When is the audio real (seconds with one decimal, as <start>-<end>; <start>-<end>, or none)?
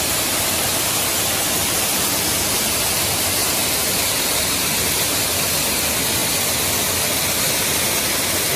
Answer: 0.0-1.6; 2.2-3.4; 4.7-8.6